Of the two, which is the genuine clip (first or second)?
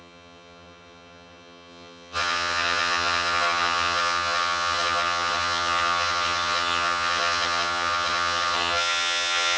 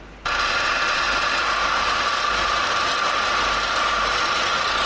second